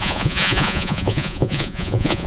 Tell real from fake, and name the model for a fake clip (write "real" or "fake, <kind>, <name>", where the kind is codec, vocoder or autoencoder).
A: fake, vocoder, Vocos